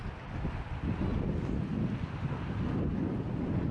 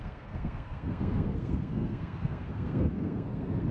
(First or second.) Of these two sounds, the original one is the first